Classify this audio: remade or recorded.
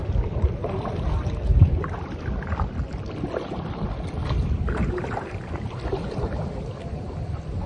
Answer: recorded